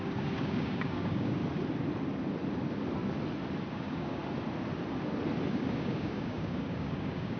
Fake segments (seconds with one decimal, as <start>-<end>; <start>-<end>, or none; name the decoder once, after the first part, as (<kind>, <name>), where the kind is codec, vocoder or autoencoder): 0.0-1.4 (codec, DAC); 3.7-4.2; 5.5-7.4